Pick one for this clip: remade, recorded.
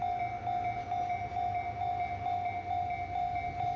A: recorded